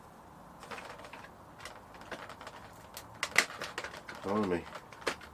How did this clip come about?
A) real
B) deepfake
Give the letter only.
A